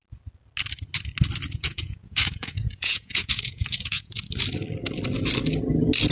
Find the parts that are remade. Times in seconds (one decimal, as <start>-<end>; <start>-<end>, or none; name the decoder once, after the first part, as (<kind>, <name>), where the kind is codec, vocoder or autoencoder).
1.5-4.2 (vocoder, Vocos)